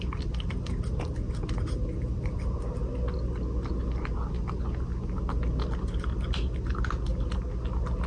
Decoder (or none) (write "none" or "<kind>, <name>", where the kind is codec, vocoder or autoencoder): none